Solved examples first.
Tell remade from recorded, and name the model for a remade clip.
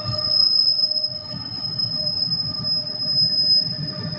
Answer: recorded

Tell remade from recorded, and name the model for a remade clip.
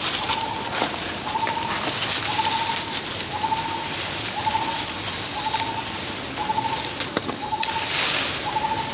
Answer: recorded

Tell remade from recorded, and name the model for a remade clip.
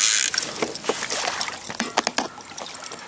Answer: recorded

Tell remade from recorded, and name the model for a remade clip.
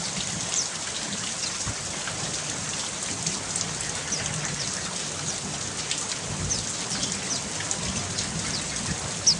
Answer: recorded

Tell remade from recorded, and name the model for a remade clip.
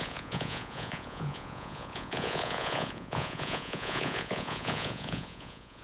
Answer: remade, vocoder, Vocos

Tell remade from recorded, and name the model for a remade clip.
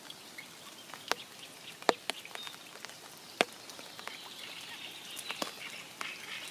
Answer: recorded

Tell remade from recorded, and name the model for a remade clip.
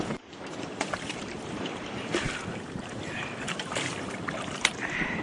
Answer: remade, vocoder, BigVGAN v2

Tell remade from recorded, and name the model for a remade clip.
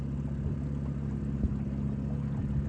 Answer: recorded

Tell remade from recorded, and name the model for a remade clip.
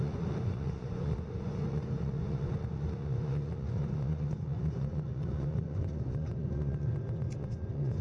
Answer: remade, vocoder, Vocos